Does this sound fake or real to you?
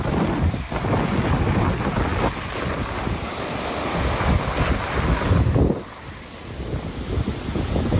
real